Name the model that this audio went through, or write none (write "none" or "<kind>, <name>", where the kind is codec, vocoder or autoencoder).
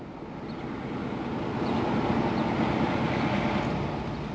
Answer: none